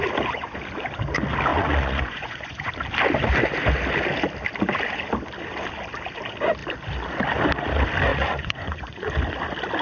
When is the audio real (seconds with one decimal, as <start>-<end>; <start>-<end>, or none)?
0.0-1.5; 2.7-8.1; 9.1-9.8